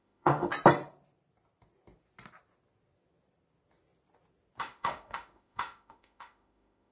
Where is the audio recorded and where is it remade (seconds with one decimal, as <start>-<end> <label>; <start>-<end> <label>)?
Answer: 0.0-0.5 remade; 0.5-4.6 recorded; 4.6-6.9 remade